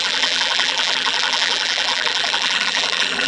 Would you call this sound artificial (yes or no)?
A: yes